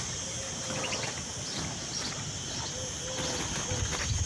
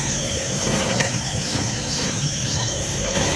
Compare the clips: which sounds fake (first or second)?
second